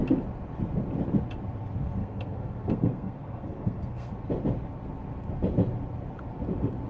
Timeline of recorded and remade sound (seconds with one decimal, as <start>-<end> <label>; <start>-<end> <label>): 0.0-2.0 recorded; 2.0-4.1 remade; 4.1-6.9 recorded